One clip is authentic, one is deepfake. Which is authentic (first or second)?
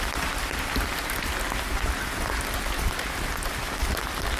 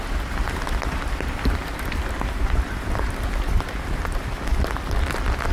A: first